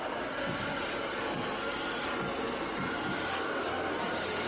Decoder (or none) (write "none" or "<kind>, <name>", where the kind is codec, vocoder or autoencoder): none